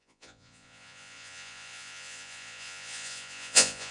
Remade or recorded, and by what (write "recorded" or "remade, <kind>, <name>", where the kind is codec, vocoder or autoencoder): remade, vocoder, Vocos